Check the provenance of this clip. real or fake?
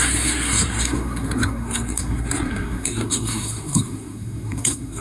fake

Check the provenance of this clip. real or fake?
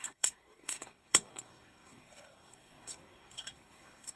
fake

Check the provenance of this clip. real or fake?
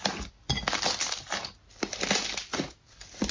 real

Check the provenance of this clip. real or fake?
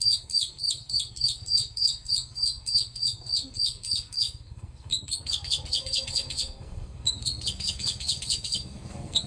fake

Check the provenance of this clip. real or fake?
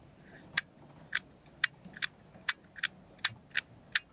real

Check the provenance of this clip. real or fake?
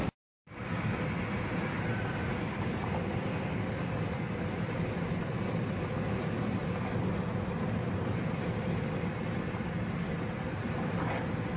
real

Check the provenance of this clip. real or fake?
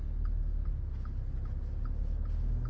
real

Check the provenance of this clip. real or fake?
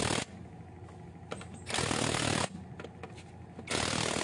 real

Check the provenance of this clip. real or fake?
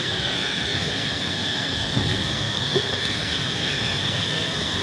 fake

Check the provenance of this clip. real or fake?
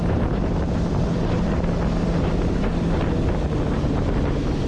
real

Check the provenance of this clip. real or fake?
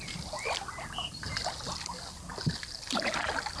real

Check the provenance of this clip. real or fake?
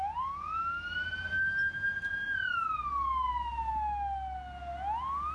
real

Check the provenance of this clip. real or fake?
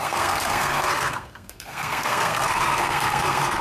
fake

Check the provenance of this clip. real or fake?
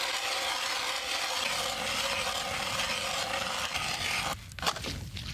real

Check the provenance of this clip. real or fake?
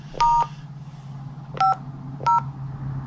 real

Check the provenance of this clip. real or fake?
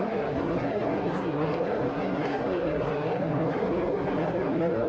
fake